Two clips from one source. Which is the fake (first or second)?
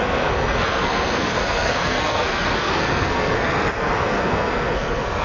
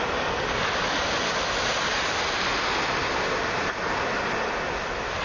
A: first